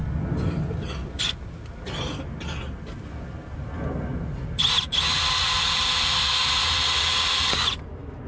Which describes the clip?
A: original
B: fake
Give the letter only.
A